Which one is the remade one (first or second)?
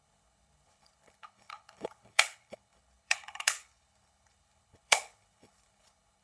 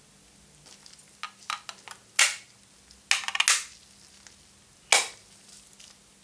first